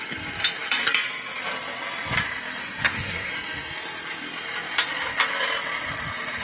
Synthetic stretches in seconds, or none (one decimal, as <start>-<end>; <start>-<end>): 2.6-3.3